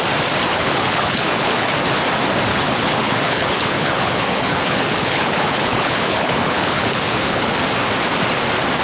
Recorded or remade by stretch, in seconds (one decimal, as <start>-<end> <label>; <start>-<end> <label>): 0.0-0.5 recorded; 0.5-1.7 remade; 1.7-2.5 recorded; 2.5-7.5 remade; 7.5-8.8 recorded